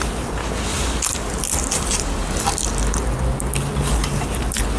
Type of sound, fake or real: real